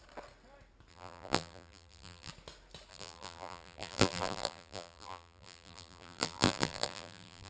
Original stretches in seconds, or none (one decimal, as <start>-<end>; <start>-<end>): 0.0-0.9; 2.3-2.9